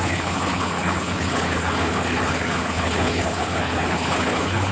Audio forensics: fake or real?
fake